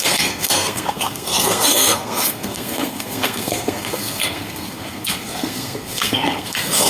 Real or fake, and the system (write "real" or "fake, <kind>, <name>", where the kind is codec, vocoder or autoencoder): fake, codec, SNAC